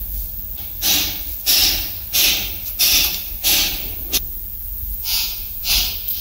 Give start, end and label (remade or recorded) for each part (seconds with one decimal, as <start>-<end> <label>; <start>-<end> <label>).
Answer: 0.0-4.8 recorded; 4.8-5.7 remade; 5.7-6.2 recorded